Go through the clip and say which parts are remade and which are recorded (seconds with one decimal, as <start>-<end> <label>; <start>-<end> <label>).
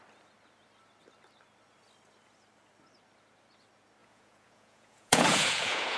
0.0-4.0 recorded; 4.0-6.0 remade